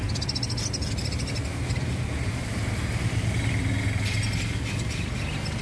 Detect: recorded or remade recorded